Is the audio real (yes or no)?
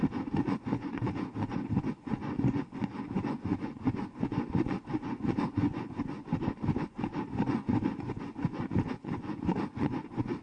no